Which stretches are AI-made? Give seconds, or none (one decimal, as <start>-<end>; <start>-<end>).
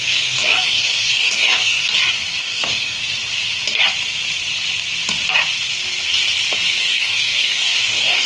0.0-1.8; 2.4-3.0; 6.8-8.3